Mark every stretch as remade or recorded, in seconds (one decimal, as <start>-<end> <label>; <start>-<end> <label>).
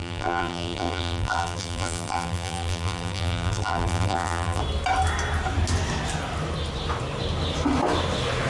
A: 0.0-4.6 remade; 4.6-8.5 recorded